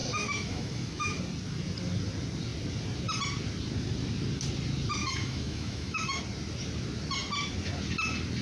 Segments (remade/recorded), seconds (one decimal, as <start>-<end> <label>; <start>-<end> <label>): 0.0-1.2 remade; 1.2-5.0 recorded; 5.0-6.2 remade; 6.2-8.4 recorded